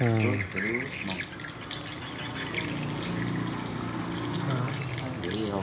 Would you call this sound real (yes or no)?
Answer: yes